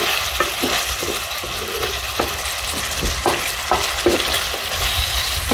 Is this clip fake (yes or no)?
no